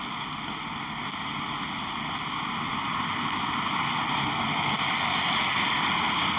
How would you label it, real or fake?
real